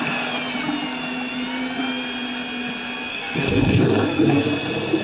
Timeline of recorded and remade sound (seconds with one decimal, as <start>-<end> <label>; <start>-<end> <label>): 0.0-3.1 recorded; 3.1-4.5 remade; 4.5-5.0 recorded